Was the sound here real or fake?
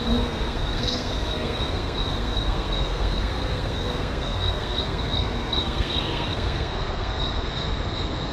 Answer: fake